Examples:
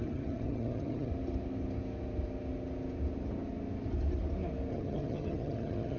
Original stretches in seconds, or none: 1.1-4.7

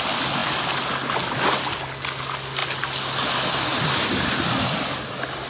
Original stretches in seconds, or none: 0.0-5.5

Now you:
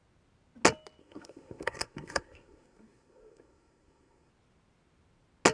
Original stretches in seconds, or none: 0.0-1.0; 4.3-5.5

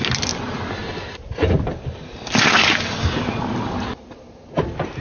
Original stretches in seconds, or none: 0.0-5.0

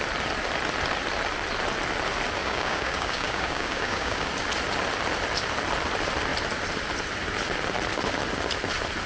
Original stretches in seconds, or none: 0.0-2.4; 4.3-9.1